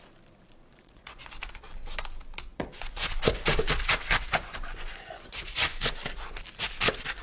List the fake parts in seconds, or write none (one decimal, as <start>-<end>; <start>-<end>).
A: 0.7-1.3; 2.5-5.9